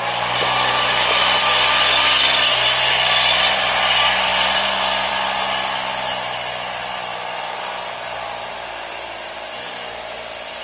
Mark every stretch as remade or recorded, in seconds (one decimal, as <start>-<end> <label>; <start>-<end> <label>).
0.0-10.6 recorded